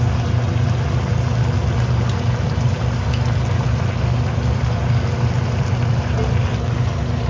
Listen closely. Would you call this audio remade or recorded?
recorded